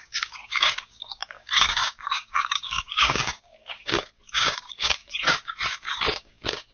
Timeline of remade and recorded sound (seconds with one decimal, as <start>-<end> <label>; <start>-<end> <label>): 0.0-6.7 remade